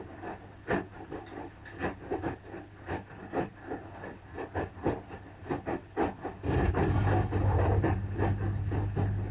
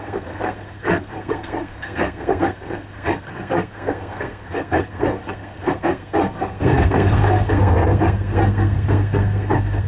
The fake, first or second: second